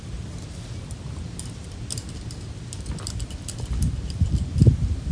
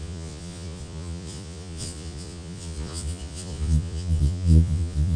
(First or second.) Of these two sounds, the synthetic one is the second